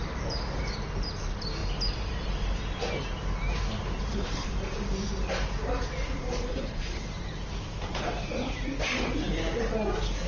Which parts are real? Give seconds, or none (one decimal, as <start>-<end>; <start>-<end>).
0.0-4.1; 4.6-6.5; 7.1-10.3